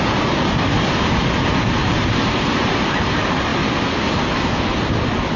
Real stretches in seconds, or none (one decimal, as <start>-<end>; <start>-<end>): 0.0-1.8; 2.6-5.4